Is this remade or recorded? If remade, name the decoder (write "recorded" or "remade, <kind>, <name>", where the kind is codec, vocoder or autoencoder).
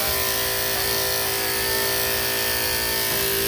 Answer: recorded